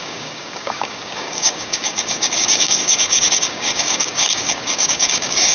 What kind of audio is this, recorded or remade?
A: remade